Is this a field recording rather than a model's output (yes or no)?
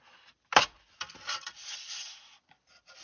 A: no